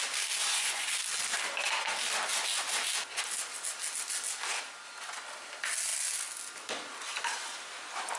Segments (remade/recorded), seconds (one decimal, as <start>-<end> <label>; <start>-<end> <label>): 0.0-0.4 recorded; 0.4-0.9 remade; 0.9-8.2 recorded